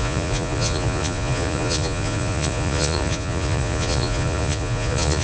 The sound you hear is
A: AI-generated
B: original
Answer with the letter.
A